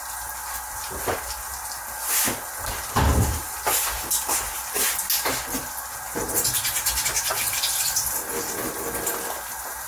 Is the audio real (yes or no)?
yes